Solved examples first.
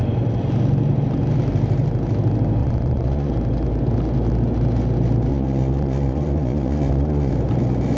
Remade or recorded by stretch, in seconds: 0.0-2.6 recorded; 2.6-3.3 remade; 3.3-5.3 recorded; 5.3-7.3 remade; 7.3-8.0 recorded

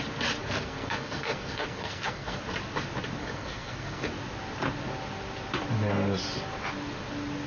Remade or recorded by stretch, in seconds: 0.0-0.4 recorded; 0.4-2.4 remade; 2.4-3.2 recorded; 3.2-4.1 remade; 4.1-7.5 recorded